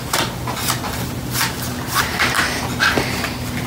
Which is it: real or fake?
real